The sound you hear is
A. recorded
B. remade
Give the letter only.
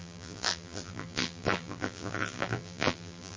B